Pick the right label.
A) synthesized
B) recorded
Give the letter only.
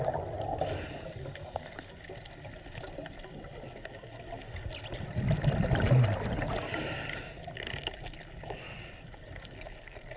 B